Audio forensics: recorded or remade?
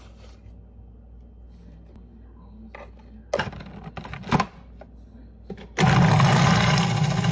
recorded